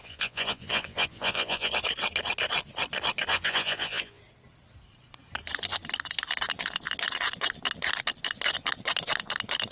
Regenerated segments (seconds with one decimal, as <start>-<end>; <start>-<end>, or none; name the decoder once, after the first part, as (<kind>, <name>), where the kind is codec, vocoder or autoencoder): 0.0-1.7 (vocoder, Vocos); 3.3-4.2